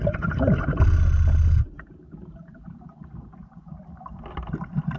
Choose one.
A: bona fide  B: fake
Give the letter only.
A